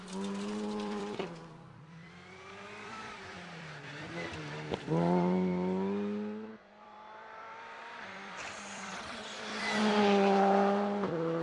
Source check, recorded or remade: remade